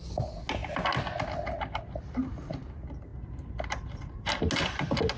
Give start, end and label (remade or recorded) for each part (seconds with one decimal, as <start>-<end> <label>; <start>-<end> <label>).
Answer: 0.0-5.2 recorded